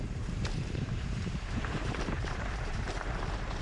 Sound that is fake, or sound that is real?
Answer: fake